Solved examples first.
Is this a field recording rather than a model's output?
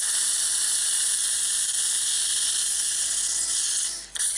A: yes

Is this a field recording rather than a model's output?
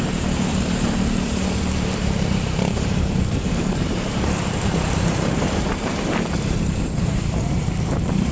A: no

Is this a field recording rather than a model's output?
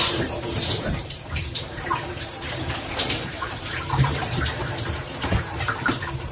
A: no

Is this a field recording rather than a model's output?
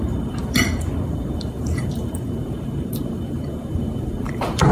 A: no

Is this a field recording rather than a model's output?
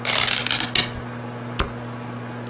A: yes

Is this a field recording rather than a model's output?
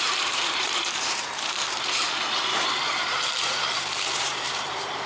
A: no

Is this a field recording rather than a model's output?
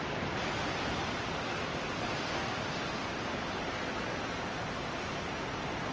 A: yes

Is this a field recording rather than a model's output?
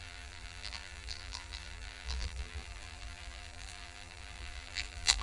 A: no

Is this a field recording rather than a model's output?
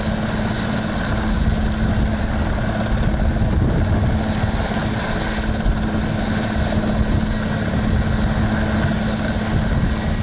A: yes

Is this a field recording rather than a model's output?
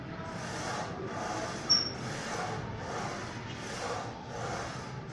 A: yes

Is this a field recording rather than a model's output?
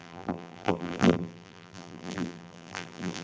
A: no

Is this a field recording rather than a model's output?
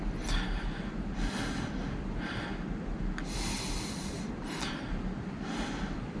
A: yes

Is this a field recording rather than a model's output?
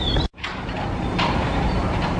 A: no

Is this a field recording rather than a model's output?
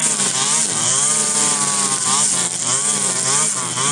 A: yes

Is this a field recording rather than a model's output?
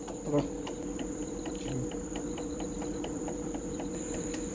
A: no